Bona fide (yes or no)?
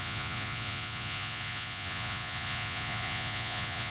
no